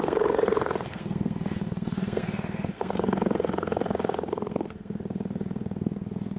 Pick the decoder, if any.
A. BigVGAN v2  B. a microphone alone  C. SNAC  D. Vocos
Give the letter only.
C